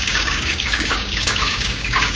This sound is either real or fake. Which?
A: fake